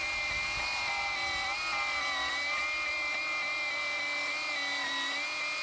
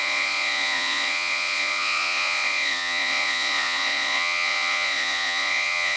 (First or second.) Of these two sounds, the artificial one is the second